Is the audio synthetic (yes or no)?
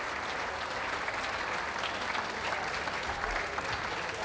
no